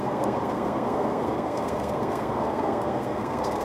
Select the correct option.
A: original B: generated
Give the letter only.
B